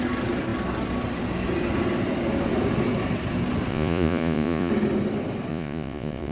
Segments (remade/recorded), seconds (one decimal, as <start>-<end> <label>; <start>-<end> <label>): 0.0-3.7 recorded; 3.7-4.7 remade; 4.7-5.5 recorded; 5.5-6.3 remade